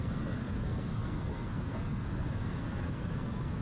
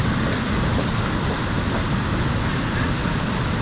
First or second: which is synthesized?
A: first